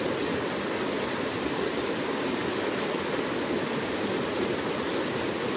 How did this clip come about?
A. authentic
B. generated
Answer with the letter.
A